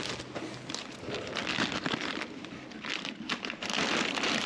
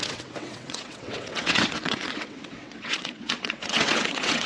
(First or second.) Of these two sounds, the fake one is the second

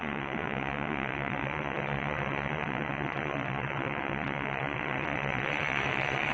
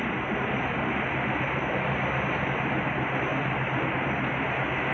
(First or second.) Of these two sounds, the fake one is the first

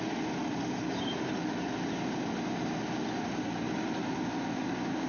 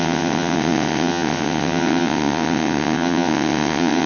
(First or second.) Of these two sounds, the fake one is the second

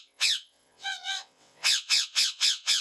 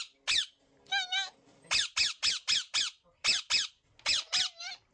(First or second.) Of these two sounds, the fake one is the first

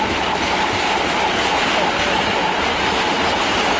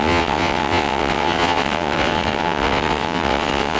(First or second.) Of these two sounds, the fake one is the second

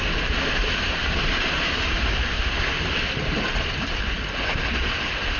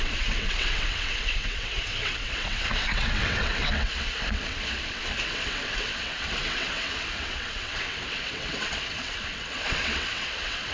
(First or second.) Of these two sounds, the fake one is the second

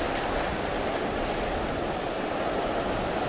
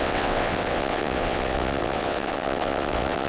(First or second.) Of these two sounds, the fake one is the second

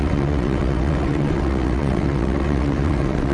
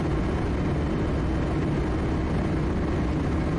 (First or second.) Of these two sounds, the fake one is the first